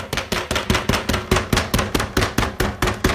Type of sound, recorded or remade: recorded